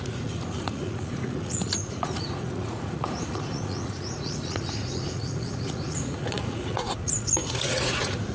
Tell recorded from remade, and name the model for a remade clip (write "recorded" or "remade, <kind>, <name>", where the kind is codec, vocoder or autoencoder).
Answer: remade, vocoder, Vocos